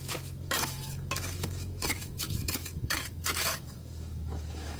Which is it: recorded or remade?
remade